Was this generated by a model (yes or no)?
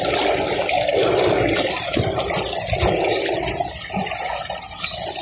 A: no